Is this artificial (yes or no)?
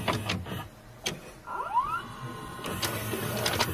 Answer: no